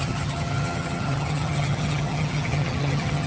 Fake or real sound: fake